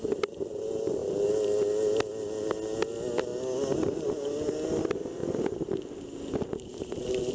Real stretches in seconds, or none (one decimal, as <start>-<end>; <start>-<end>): 0.0-7.3